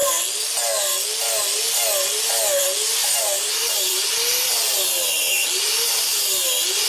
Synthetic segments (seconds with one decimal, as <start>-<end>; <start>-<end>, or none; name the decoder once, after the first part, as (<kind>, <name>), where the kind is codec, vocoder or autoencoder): 3.0-4.1 (vocoder, BigVGAN v2)